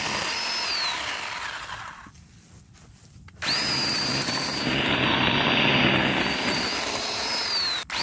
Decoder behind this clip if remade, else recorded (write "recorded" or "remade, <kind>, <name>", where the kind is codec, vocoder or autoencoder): recorded